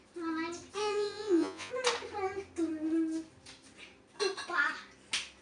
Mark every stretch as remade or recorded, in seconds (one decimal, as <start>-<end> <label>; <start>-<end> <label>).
0.0-0.8 recorded; 0.8-1.7 remade; 1.7-5.4 recorded